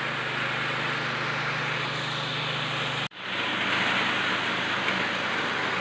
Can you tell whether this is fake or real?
real